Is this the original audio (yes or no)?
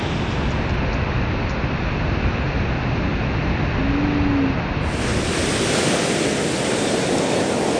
yes